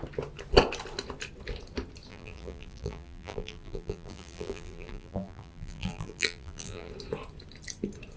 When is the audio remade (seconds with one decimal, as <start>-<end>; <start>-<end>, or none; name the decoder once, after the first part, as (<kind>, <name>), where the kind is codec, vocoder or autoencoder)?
2.1-6.9 (vocoder, BigVGAN v2)